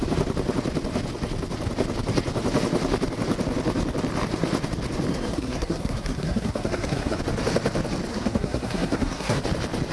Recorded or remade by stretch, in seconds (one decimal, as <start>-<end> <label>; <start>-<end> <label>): 0.0-5.1 recorded; 5.1-7.2 remade; 7.2-8.1 recorded; 8.1-9.4 remade; 9.4-9.9 recorded